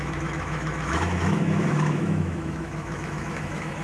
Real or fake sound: fake